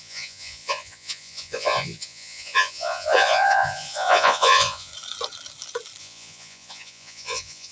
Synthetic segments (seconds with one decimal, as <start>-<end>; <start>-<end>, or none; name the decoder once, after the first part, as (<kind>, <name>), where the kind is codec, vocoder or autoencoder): 0.0-4.9 (vocoder, Vocos); 6.0-7.7